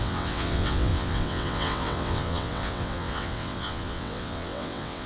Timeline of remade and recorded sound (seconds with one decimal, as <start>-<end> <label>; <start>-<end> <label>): 0.0-5.1 remade